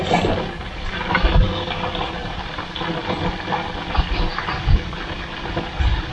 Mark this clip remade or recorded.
recorded